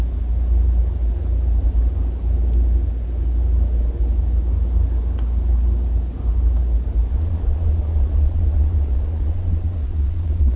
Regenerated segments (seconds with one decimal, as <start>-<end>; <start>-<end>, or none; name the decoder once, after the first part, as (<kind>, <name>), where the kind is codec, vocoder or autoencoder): 7.1-10.6 (vocoder, Vocos)